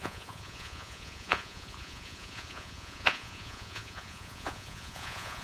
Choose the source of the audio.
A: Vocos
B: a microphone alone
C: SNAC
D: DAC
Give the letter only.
A